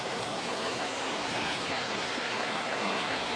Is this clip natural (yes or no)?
no